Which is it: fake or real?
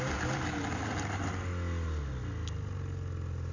real